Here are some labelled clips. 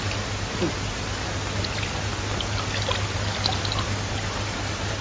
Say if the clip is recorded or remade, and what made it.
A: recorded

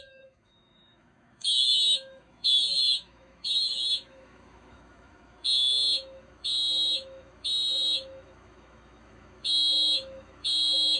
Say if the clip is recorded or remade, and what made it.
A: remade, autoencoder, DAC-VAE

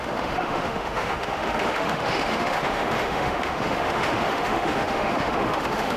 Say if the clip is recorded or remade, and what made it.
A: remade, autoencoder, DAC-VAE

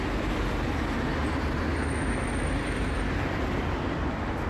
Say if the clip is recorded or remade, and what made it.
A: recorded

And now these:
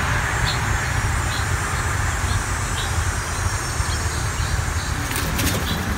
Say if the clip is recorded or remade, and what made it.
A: recorded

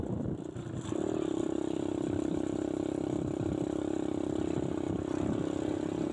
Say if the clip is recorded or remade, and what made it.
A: recorded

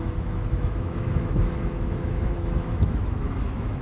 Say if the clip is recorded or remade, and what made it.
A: remade, autoencoder, DAC-VAE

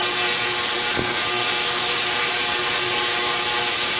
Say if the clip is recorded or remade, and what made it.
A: recorded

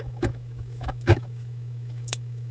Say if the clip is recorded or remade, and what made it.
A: remade, autoencoder, DAC-VAE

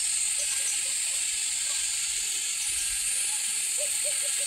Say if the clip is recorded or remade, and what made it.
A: recorded